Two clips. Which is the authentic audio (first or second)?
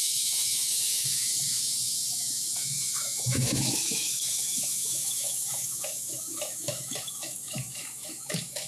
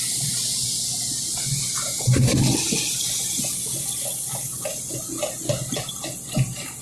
second